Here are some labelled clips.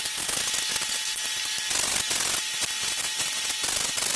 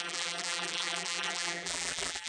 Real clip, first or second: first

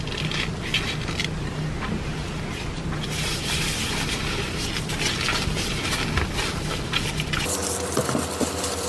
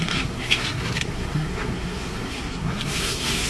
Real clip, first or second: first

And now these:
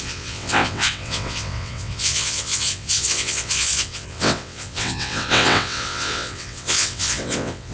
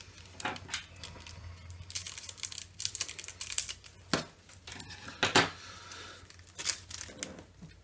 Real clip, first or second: second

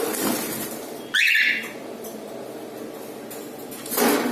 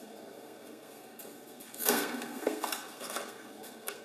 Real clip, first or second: first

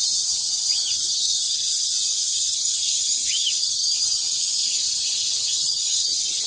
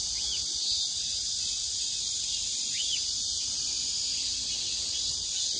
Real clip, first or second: second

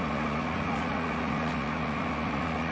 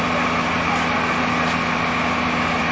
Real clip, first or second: second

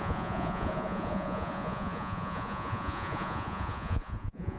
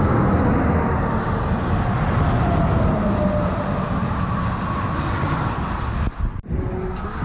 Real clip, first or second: second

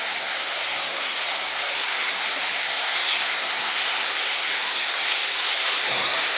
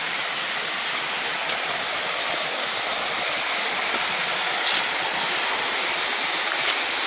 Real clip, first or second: second